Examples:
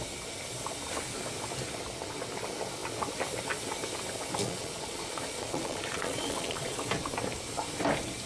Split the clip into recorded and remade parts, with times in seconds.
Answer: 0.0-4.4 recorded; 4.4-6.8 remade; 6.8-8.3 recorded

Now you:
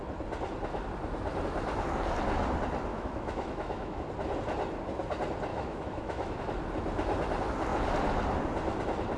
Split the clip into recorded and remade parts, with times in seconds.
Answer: 0.0-2.9 recorded; 2.9-4.1 remade; 4.1-5.5 recorded; 5.5-6.4 remade; 6.4-9.2 recorded

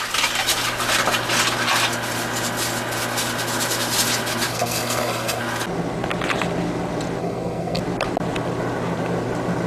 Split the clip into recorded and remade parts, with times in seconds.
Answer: 0.0-4.5 recorded; 4.5-5.4 remade; 5.4-7.2 recorded; 7.2-7.8 remade; 7.8-9.7 recorded